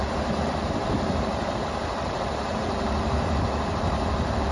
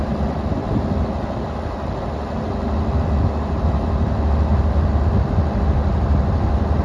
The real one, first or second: second